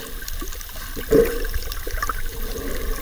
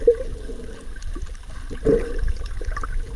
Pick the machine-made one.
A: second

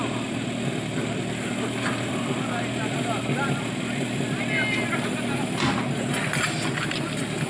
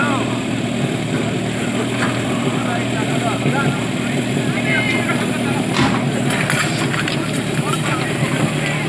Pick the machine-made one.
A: second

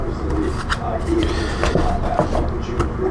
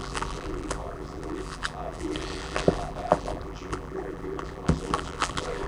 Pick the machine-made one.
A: second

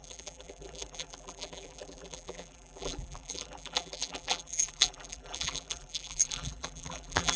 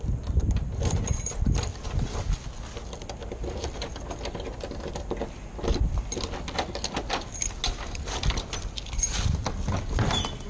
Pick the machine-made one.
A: first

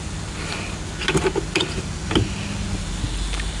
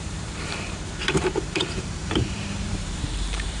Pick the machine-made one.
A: second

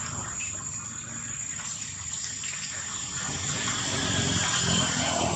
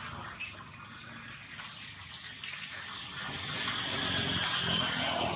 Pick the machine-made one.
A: first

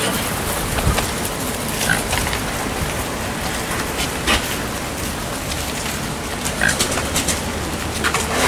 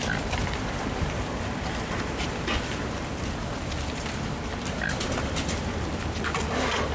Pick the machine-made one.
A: second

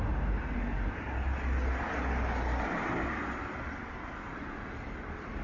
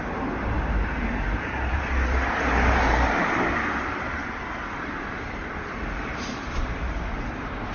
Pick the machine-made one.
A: second